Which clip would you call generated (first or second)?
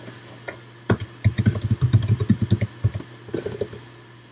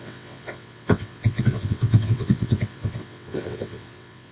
second